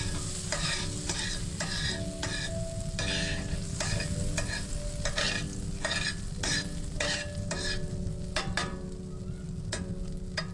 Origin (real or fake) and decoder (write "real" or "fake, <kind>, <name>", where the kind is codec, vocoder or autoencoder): real